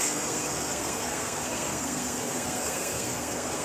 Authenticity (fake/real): fake